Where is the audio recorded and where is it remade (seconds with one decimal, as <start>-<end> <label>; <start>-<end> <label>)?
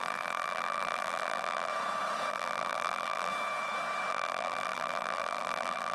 0.0-1.7 remade; 1.7-2.3 recorded; 2.3-3.3 remade; 3.3-4.1 recorded; 4.1-5.9 remade